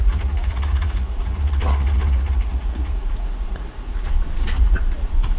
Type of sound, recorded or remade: remade